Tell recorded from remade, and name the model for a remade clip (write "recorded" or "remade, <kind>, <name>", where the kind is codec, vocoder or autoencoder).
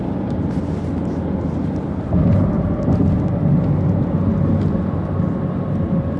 recorded